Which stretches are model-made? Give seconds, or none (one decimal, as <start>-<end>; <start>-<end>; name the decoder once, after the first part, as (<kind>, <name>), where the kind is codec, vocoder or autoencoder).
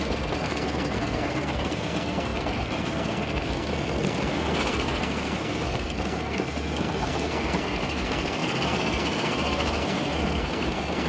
0.0-11.1 (codec, SNAC)